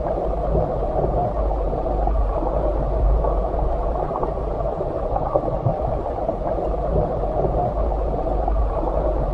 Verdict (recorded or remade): remade